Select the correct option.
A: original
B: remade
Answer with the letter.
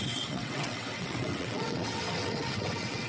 B